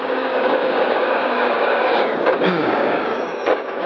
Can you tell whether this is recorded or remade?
remade